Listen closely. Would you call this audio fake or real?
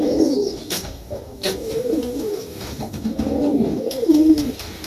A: fake